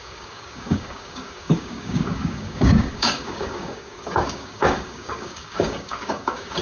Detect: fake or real fake